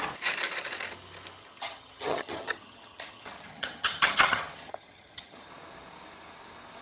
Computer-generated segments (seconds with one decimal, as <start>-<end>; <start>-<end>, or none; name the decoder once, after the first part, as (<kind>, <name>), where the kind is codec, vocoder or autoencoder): 1.4-5.5 (vocoder, HiFi-GAN)